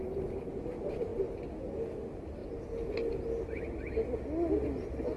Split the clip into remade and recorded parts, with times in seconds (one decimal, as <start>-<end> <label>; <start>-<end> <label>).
0.0-5.2 recorded